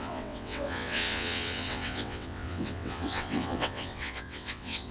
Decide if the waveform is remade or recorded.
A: remade